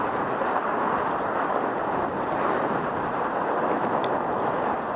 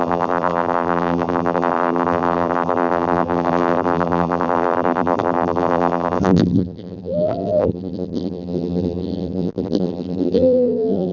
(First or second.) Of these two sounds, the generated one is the second